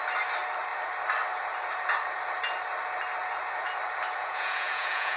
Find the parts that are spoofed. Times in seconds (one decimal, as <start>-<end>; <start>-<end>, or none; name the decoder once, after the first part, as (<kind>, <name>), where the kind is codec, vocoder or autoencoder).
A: 4.2-5.2 (vocoder, Vocos)